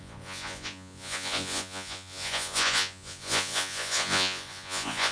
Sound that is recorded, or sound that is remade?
remade